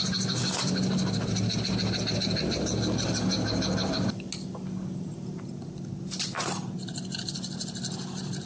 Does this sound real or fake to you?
real